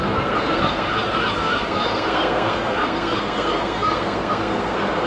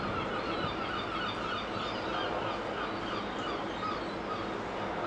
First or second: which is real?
second